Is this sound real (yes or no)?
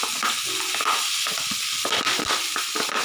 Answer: yes